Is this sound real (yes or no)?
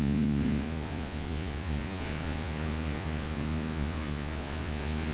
no